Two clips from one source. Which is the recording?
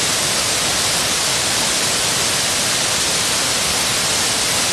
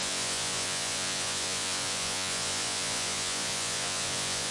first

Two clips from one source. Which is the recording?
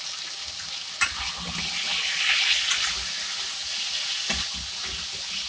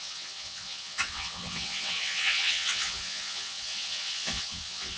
first